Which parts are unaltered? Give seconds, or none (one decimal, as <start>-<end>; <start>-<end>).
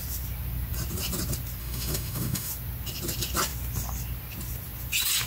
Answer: 0.0-1.6; 2.5-5.3